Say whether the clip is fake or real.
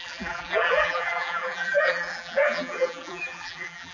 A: fake